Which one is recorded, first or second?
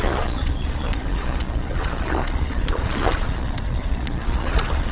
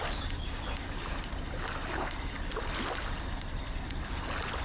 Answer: second